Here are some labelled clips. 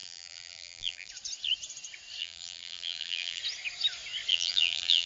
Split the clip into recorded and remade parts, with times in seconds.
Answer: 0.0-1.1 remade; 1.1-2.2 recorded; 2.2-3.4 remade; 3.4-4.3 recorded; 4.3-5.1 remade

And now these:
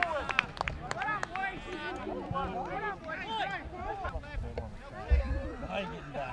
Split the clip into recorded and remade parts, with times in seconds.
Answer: 0.0-6.3 recorded

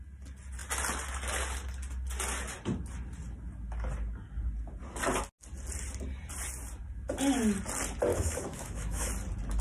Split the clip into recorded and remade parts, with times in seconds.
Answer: 0.0-8.1 recorded; 8.1-9.1 remade; 9.1-9.6 recorded